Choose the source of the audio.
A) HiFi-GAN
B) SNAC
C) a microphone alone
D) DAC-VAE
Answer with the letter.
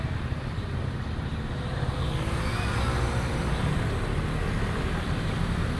C